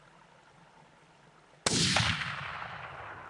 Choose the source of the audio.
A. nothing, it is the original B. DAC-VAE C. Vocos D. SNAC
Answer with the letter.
A